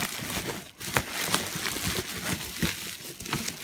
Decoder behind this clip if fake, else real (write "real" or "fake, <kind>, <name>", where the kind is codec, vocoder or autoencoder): real